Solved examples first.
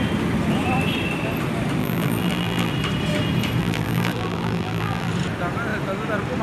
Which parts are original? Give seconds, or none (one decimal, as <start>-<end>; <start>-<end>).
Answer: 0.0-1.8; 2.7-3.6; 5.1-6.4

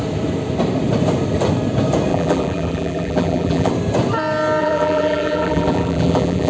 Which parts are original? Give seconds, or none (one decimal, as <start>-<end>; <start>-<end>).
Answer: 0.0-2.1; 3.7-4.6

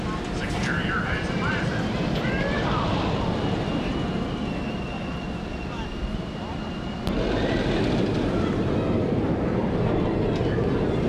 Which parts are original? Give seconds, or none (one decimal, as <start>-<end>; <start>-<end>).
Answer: 0.0-0.6; 4.1-11.1

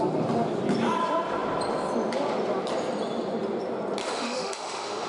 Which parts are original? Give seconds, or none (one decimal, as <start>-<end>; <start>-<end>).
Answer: 0.0-4.0